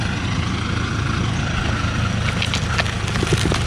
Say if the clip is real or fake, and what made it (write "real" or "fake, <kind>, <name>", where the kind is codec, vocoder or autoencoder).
real